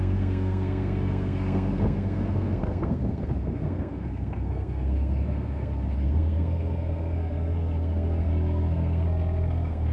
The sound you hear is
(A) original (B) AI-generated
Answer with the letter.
B